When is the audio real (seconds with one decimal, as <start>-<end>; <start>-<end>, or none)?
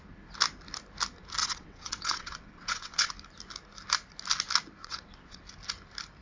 0.0-1.4; 3.1-4.8; 5.4-6.2